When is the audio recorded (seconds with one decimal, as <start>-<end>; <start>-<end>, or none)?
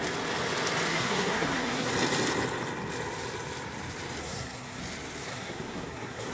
0.0-0.9; 1.9-4.2; 4.8-5.3